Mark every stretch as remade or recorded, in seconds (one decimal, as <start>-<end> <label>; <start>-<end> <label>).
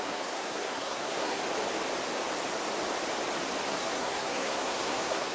0.0-1.4 remade; 1.4-3.7 recorded; 3.7-5.3 remade